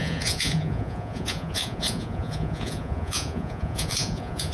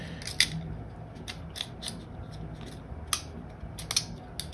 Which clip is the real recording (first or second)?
second